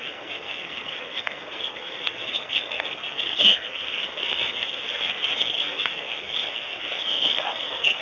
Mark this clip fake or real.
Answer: fake